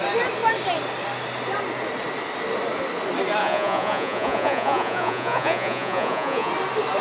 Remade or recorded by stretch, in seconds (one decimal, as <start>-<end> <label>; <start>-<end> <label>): 0.0-3.4 recorded; 3.4-6.5 remade; 6.5-7.0 recorded